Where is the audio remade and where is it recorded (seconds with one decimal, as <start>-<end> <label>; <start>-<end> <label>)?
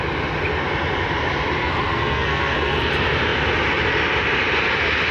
0.0-1.6 recorded; 1.6-2.9 remade; 2.9-5.1 recorded